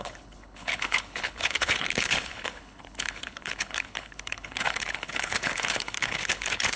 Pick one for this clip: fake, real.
fake